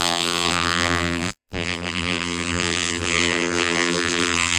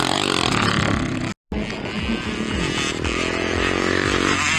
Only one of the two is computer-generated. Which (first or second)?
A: first